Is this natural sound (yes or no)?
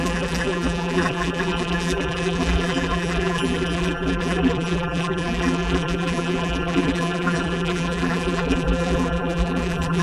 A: no